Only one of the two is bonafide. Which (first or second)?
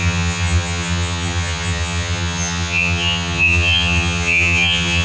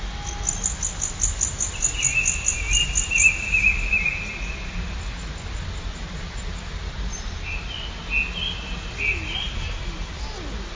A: second